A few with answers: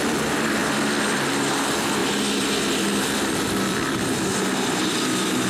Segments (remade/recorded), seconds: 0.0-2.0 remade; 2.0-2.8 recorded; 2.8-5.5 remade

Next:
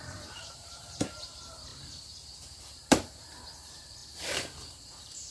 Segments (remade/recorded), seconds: 0.0-1.7 remade; 1.7-2.6 recorded; 2.6-5.3 remade